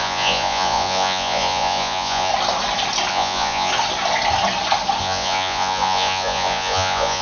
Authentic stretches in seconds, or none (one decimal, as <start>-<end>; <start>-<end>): 2.3-3.1; 3.7-5.0